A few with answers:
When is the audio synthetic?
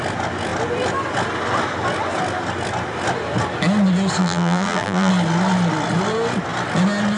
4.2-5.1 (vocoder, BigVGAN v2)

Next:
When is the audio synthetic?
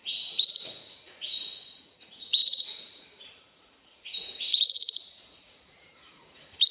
0.0-6.7 (vocoder, Vocos)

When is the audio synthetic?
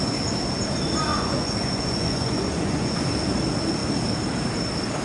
1.1-3.1 (vocoder, Vocos)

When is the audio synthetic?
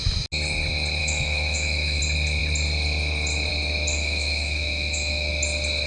1.0-2.0 (autoencoder, DAC-VAE); 3.9-5.3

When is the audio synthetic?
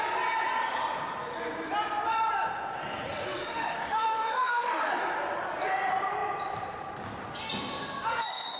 3.4-5.0 (autoencoder, DAC-VAE)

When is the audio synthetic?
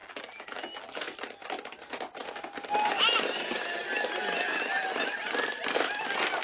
0.0-1.0 (vocoder, BigVGAN v2)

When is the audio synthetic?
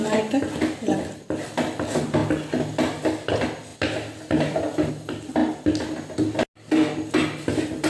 0.0-2.2 (vocoder, BigVGAN v2); 3.3-5.4; 7.5-7.9